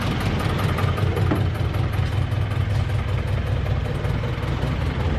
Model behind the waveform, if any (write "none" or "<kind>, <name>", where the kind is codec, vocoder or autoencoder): none